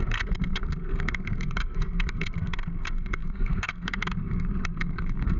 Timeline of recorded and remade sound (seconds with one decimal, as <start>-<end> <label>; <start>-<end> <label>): 0.0-5.4 remade